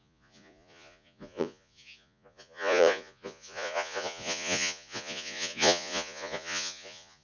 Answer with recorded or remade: remade